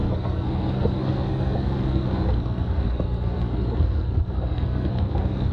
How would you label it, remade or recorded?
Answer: remade